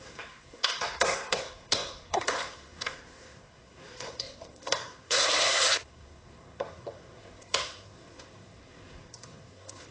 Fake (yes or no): yes